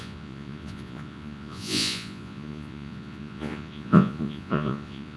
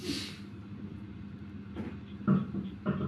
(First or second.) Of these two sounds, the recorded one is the second